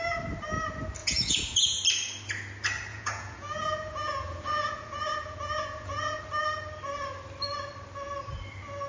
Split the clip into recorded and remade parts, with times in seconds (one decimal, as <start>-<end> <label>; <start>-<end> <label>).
0.0-1.0 recorded; 1.0-1.8 remade; 1.8-2.9 recorded; 2.9-6.2 remade; 6.2-8.9 recorded